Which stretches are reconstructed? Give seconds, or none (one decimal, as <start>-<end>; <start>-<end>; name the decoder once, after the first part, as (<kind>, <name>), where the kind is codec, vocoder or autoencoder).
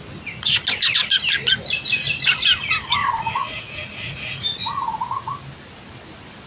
3.0-5.3 (vocoder, Vocos)